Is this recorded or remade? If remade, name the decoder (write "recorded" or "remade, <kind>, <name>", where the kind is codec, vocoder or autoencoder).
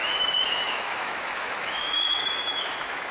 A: remade, autoencoder, DAC-VAE